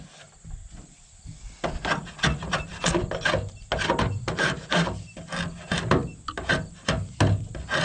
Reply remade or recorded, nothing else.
recorded